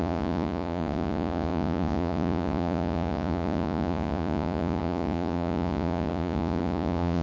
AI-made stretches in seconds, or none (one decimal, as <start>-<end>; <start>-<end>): 0.0-7.2